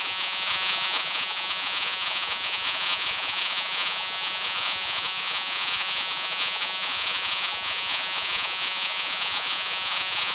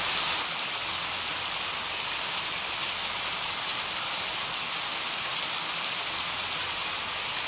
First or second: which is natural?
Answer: second